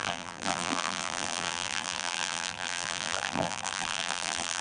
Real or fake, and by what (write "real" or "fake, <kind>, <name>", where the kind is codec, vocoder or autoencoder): fake, vocoder, BigVGAN v2